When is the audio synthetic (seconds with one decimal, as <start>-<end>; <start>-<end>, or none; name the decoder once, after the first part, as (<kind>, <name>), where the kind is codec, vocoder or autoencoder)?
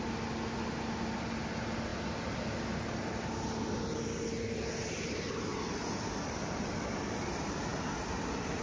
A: none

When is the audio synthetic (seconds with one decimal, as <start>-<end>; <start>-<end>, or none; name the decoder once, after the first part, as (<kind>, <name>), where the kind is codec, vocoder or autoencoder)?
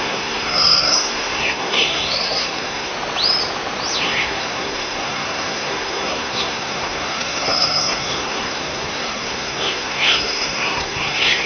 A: 0.0-2.9 (codec, SNAC); 4.0-11.5